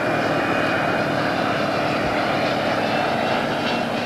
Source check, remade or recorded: recorded